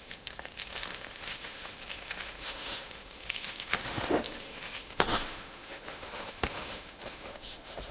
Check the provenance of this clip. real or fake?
fake